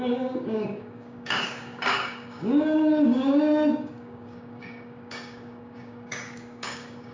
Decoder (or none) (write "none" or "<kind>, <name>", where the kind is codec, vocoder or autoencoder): codec, DAC